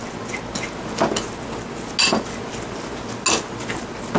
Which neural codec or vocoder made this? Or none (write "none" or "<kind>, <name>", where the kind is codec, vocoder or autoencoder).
none